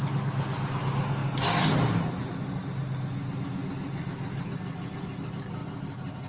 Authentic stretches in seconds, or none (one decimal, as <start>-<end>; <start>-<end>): 0.0-6.3